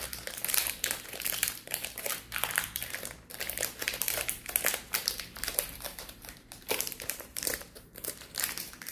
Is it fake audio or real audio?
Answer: fake